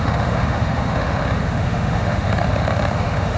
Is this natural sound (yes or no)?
no